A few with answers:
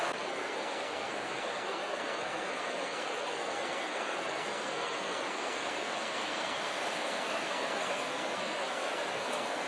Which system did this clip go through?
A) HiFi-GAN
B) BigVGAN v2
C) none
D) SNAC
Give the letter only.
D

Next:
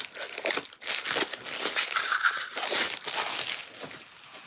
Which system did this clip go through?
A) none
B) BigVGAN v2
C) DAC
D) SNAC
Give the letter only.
A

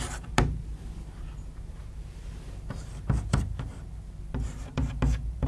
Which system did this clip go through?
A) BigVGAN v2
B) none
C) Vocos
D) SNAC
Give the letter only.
A